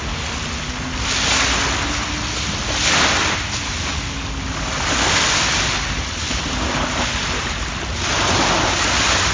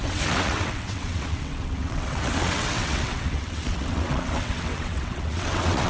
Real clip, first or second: first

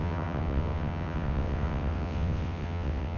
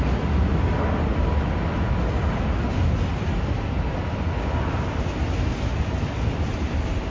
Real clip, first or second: second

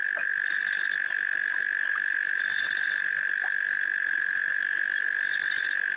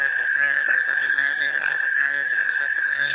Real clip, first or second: first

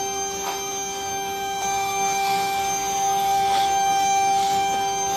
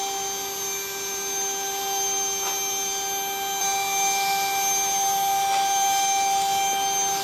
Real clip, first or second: second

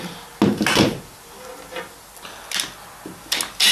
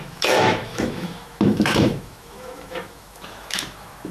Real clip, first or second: first